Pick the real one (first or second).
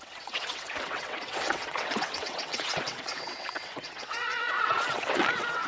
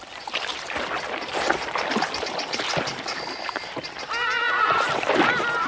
second